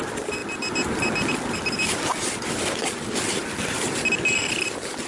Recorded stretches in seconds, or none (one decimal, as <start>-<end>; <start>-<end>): 0.0-5.1